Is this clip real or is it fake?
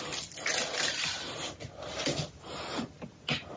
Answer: real